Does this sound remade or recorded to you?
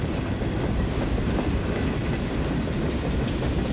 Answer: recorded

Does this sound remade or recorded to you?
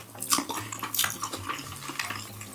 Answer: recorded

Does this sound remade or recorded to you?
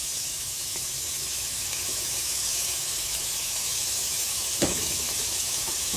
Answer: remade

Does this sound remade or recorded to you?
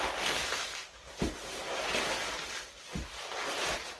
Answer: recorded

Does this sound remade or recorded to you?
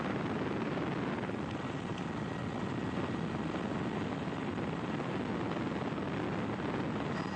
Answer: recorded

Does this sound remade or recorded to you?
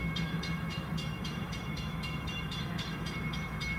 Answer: remade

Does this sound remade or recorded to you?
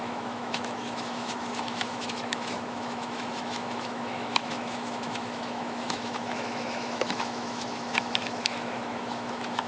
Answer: remade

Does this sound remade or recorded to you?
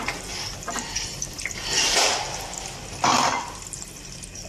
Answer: recorded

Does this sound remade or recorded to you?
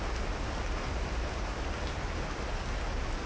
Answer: recorded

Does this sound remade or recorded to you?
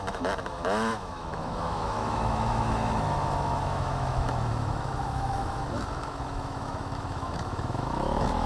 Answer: remade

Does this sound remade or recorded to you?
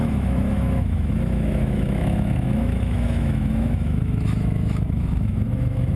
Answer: remade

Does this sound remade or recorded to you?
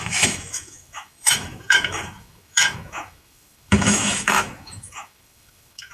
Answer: remade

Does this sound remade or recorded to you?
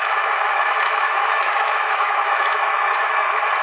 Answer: remade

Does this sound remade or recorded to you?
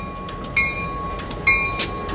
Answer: recorded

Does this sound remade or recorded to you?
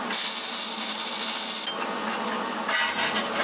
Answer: recorded